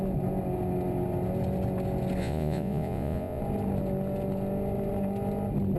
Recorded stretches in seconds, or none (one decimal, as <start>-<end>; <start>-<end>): 0.0-2.2; 3.4-5.8